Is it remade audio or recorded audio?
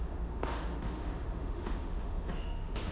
remade